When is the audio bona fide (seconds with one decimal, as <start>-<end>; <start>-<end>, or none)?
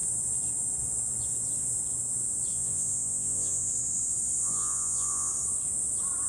0.0-2.5; 3.7-4.4; 5.3-6.3